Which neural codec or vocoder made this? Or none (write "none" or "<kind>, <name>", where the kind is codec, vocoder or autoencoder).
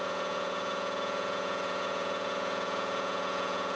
vocoder, Vocos